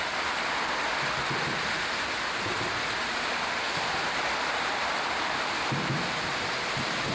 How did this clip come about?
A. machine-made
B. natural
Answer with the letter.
B